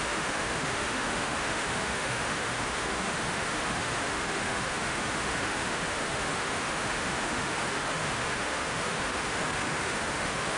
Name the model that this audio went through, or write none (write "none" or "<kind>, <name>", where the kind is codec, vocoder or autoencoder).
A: autoencoder, DAC-VAE